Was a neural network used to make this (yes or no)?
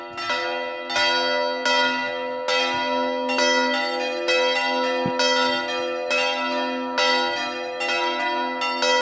no